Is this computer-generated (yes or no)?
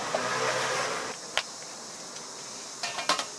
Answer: no